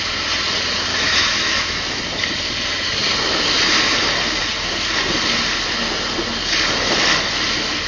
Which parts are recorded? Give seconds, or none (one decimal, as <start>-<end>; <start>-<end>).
0.0-0.9; 2.0-7.9